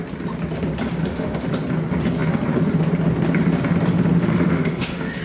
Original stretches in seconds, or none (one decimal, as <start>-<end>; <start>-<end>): 0.0-1.0; 1.5-4.2